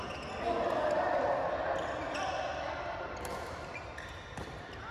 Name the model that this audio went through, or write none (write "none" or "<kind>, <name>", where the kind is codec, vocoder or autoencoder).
none